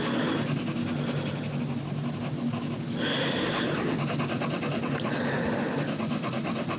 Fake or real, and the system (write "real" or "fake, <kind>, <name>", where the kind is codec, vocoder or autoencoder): real